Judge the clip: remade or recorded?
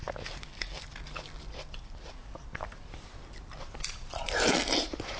remade